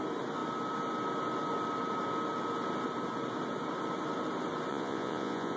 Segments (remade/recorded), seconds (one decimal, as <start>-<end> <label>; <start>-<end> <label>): 0.0-4.7 recorded; 4.7-5.6 remade